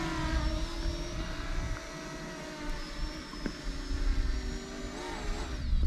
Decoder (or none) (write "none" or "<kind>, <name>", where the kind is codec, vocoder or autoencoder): none